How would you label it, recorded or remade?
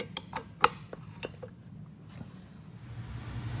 recorded